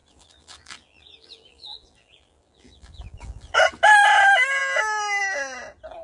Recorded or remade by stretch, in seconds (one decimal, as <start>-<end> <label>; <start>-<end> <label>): 0.0-3.6 remade; 3.6-6.0 recorded

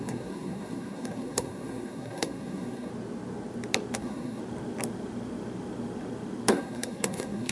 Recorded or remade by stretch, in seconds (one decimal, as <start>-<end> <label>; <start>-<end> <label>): 0.0-2.9 remade; 2.9-4.0 recorded; 4.0-4.4 remade; 4.4-6.5 recorded; 6.5-7.5 remade

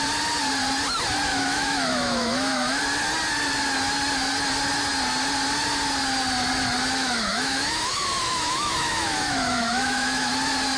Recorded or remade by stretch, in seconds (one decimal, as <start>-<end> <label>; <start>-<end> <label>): 0.0-1.3 recorded; 1.3-2.8 remade; 2.8-7.0 recorded; 7.0-10.3 remade; 10.3-10.8 recorded

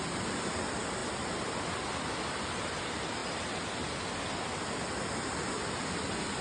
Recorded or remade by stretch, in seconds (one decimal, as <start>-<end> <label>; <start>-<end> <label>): 0.0-6.4 recorded

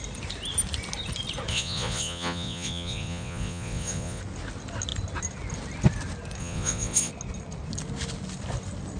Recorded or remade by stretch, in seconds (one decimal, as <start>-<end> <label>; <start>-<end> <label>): 0.0-1.5 recorded; 1.5-4.2 remade; 4.2-6.4 recorded; 6.4-7.1 remade; 7.1-9.0 recorded

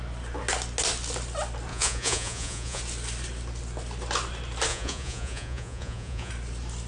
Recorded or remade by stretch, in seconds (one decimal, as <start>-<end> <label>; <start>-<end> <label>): 0.0-1.7 recorded; 1.7-2.8 remade; 2.8-4.7 recorded; 4.7-6.3 remade; 6.3-6.9 recorded

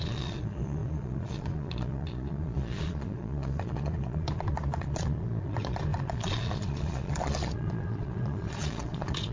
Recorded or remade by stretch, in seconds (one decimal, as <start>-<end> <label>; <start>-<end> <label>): 0.0-9.3 remade

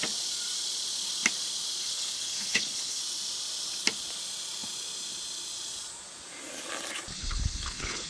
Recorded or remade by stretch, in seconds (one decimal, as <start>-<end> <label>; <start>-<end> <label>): 0.0-1.8 recorded; 1.8-3.0 remade; 3.0-7.1 recorded; 7.1-8.1 remade